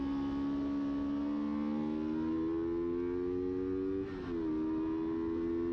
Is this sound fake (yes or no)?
no